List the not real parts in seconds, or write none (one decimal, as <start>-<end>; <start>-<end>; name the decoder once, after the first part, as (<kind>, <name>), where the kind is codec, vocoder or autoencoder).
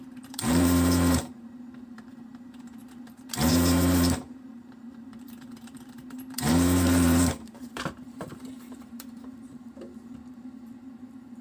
0.0-2.8 (vocoder, BigVGAN v2); 3.5-11.4